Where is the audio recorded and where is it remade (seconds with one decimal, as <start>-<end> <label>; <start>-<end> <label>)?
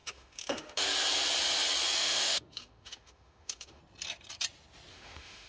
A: 0.0-0.8 remade; 0.8-2.0 recorded; 2.0-3.8 remade; 3.8-4.9 recorded; 4.9-5.5 remade